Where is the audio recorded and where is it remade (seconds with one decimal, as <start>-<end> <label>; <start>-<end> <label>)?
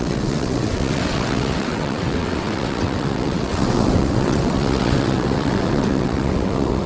0.0-6.9 remade